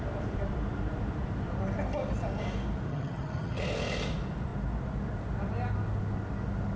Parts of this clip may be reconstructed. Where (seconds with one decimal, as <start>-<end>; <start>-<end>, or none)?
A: 2.9-3.6